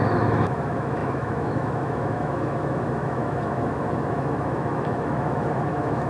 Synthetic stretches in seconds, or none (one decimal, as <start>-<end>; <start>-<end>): 0.0-6.1